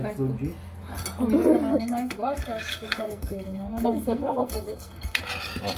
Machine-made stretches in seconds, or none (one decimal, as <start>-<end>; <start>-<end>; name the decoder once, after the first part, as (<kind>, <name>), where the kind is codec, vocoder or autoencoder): 1.7-5.2 (codec, SNAC)